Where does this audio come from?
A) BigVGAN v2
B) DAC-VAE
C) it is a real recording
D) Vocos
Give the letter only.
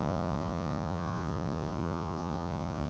D